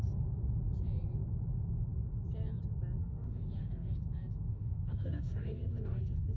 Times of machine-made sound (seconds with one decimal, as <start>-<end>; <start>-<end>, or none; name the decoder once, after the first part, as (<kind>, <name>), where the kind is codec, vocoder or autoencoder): 3.0-6.4 (autoencoder, DAC-VAE)